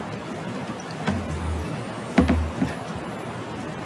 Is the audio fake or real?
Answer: real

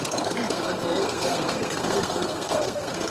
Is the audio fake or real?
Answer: fake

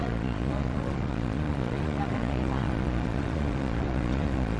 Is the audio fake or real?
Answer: fake